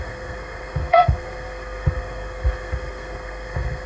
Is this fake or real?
fake